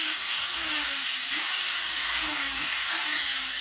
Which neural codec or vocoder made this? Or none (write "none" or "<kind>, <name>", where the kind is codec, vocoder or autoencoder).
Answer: codec, DAC